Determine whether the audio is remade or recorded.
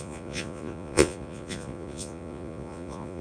remade